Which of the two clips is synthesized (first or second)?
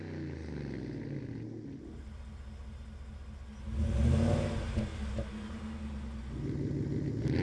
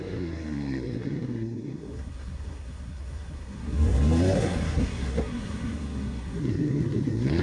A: second